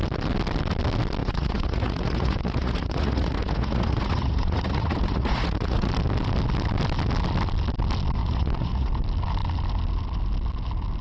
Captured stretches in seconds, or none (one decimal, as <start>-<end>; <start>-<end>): 0.0-1.2; 5.9-8.2; 8.9-11.0